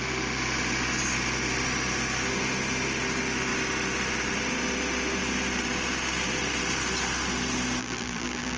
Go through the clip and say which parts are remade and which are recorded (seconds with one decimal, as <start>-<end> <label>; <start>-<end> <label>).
0.0-7.8 recorded; 7.8-8.6 remade